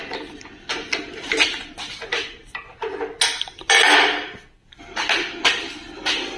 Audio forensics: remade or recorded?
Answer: recorded